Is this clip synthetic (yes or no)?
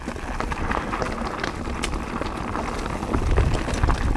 no